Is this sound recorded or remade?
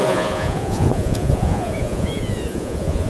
remade